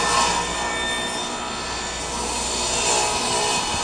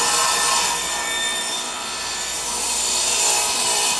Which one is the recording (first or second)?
first